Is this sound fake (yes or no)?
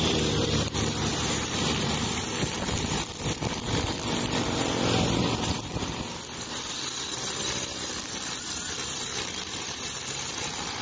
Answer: yes